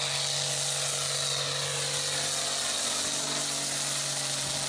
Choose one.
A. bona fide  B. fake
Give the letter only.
A